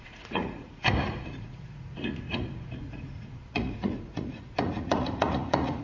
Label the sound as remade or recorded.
remade